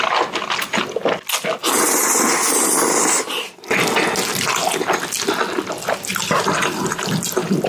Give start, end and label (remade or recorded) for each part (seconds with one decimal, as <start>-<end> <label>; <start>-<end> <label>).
0.0-7.7 recorded